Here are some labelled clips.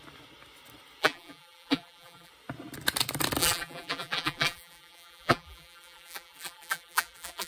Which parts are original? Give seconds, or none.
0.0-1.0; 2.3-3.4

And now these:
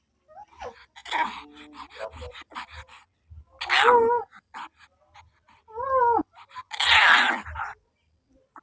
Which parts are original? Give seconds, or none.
0.0-8.6